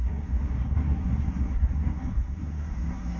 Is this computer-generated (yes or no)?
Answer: yes